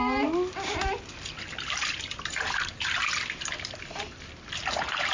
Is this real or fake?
real